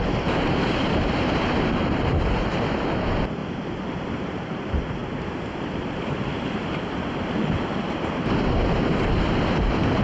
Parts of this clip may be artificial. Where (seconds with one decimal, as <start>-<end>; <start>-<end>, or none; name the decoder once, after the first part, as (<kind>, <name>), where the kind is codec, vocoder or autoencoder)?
0.0-3.4 (vocoder, BigVGAN v2); 4.1-5.0; 5.6-10.0

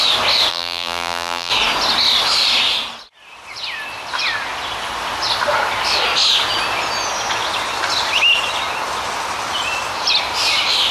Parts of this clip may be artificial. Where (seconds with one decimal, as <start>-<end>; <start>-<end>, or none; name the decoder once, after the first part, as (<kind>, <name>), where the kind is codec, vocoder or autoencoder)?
0.5-1.5 (vocoder, BigVGAN v2)

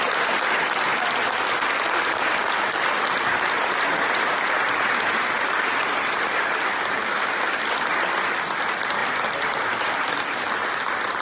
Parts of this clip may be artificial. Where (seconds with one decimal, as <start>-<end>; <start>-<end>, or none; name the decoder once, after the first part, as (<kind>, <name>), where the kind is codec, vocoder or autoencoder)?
none

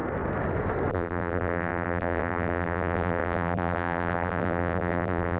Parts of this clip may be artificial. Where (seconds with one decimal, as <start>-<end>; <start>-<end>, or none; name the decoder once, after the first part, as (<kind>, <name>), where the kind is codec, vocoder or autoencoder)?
0.9-5.4 (vocoder, BigVGAN v2)

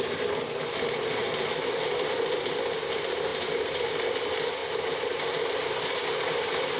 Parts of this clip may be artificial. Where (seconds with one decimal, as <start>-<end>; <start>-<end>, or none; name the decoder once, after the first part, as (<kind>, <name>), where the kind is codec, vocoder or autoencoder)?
3.3-3.9 (vocoder, BigVGAN v2); 4.6-5.3

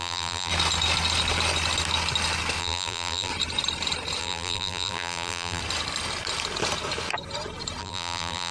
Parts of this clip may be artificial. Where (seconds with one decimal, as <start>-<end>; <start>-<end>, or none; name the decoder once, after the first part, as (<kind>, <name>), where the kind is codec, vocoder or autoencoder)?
0.0-0.5 (vocoder, BigVGAN v2); 2.6-3.3; 4.2-5.6; 7.8-8.5

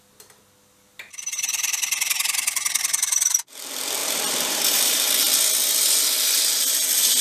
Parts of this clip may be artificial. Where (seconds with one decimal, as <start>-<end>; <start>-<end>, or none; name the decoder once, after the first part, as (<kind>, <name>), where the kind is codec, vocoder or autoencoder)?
4.0-5.1 (vocoder, BigVGAN v2)

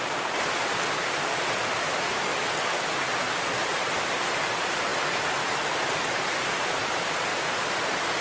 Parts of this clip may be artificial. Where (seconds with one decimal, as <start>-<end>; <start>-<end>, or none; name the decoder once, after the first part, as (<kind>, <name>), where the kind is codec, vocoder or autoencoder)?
0.0-2.3 (vocoder, BigVGAN v2); 3.6-7.3